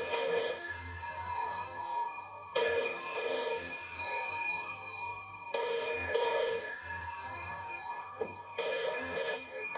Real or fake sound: fake